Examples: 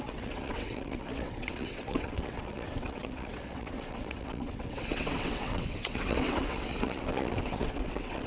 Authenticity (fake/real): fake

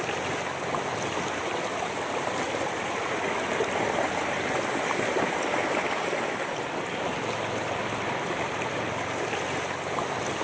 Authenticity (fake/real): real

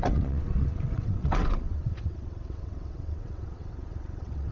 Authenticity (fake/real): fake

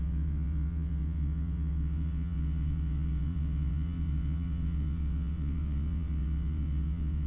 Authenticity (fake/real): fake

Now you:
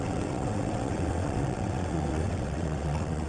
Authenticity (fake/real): fake